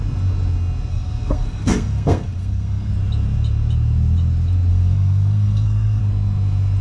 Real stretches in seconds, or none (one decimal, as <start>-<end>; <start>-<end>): 0.0-0.9; 2.9-4.7; 6.0-6.8